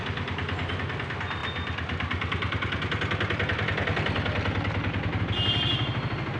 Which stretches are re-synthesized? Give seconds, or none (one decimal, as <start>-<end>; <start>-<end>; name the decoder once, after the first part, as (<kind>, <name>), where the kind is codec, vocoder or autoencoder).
none